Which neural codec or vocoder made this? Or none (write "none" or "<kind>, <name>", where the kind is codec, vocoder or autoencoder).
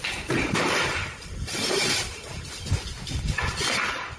none